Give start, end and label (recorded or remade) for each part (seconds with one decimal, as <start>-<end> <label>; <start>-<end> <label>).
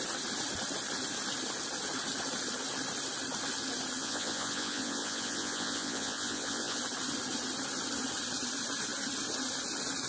0.0-4.0 recorded; 4.0-6.8 remade; 6.8-10.1 recorded